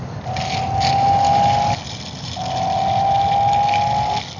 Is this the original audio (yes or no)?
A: yes